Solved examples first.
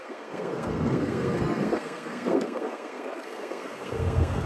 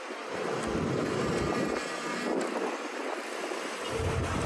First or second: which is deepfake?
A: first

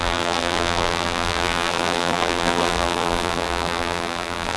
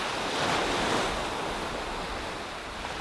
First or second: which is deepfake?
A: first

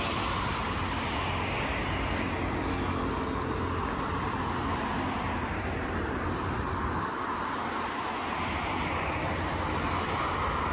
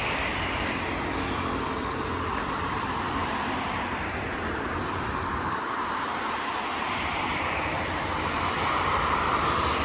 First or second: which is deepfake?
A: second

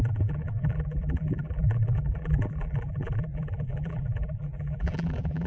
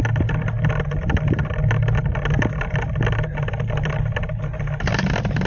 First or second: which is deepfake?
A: first